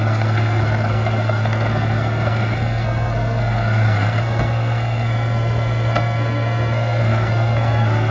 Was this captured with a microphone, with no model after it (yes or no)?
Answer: no